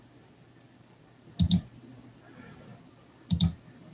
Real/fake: real